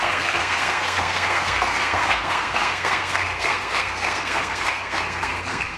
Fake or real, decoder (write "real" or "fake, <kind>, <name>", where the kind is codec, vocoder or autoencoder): fake, codec, SNAC